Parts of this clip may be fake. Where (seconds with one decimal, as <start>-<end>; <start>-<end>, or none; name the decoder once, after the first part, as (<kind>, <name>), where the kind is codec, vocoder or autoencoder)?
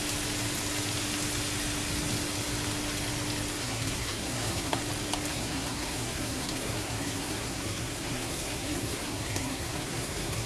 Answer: 3.6-4.8 (codec, SNAC); 5.3-10.5